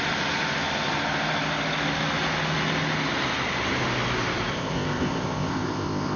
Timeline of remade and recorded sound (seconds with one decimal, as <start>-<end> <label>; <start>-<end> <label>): 0.0-4.5 recorded; 4.5-6.2 remade